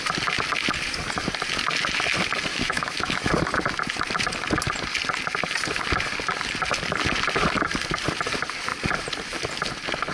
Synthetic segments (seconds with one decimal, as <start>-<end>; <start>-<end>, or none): 2.5-3.3